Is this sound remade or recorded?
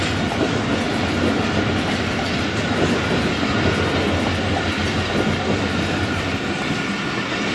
recorded